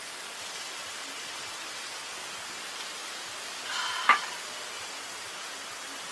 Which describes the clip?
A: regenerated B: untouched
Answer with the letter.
B